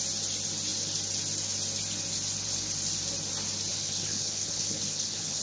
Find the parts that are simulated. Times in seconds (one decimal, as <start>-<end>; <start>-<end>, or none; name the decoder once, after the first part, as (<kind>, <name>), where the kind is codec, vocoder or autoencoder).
3.7-5.4 (codec, HILCodec)